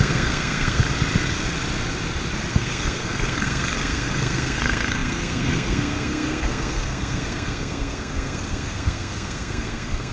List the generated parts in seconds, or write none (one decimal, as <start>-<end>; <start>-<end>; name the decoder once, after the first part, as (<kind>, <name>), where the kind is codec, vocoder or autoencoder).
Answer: 0.0-0.8 (codec, SNAC); 2.5-10.1